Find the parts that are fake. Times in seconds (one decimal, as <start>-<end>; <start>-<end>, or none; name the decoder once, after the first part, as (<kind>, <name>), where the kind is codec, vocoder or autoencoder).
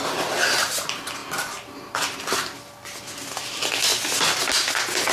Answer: none